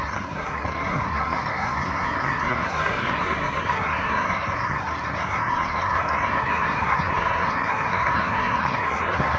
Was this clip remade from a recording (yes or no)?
yes